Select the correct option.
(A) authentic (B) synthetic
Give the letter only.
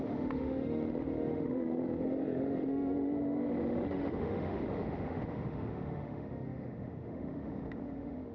B